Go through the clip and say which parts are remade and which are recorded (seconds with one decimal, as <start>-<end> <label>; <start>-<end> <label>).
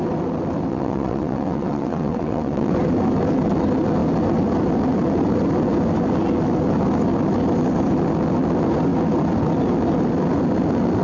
0.0-0.7 recorded; 0.7-2.7 remade; 2.7-11.0 recorded